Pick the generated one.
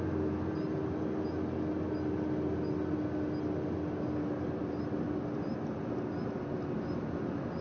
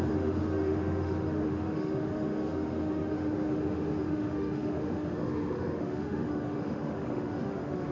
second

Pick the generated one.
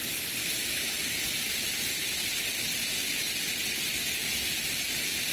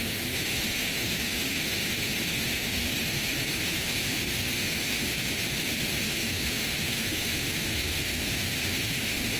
second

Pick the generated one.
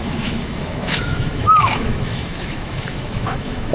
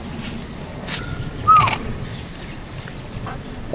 first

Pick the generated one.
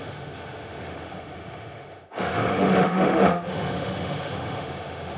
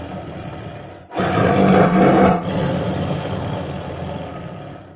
first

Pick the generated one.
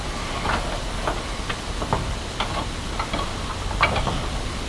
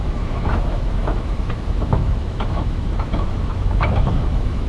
second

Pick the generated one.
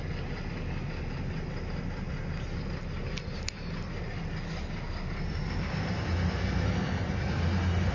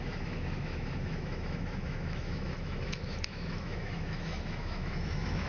second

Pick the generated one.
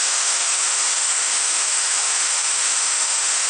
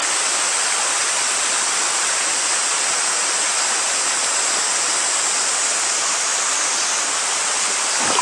first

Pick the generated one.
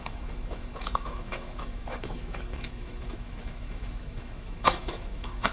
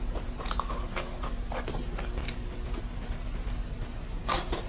first